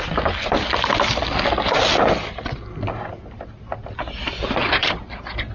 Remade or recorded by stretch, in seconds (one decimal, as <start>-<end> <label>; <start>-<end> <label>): 0.0-5.5 recorded